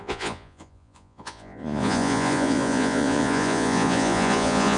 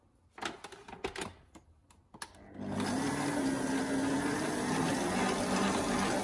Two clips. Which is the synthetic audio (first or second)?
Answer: first